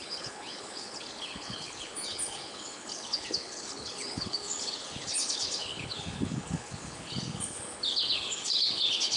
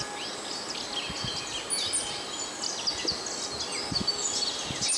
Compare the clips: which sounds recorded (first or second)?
second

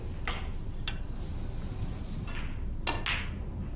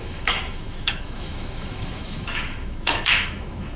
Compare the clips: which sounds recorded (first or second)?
first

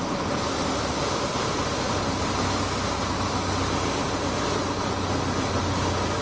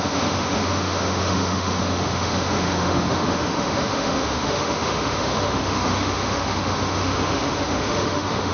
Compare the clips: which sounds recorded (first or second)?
first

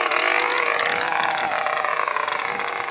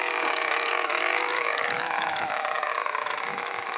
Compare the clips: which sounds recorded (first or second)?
first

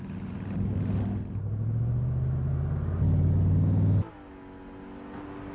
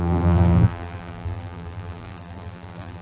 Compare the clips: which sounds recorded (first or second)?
first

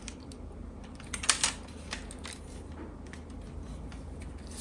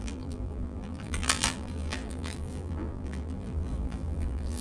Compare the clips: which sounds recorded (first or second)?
first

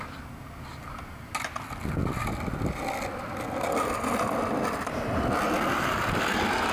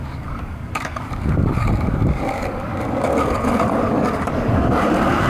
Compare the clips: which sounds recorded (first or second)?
first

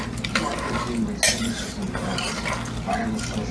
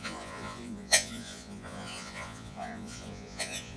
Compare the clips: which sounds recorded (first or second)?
first